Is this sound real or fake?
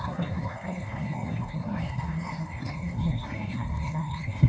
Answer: fake